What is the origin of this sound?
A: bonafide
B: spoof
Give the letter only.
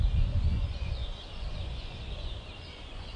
B